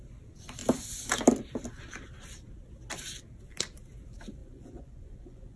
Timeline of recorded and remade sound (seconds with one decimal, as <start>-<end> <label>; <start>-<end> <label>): 0.0-4.4 recorded; 4.4-5.6 remade